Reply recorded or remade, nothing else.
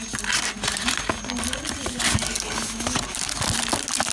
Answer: recorded